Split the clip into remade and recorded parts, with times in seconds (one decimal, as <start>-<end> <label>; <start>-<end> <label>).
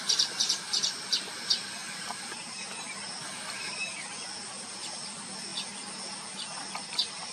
0.0-1.8 remade; 1.8-3.4 recorded; 3.4-5.5 remade; 5.5-6.7 recorded; 6.7-7.3 remade